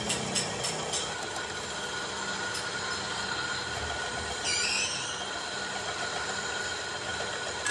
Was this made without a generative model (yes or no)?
yes